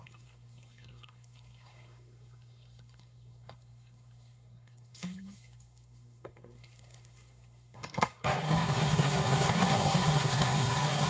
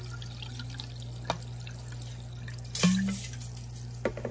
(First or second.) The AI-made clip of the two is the first